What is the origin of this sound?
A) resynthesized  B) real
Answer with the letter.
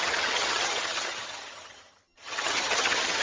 A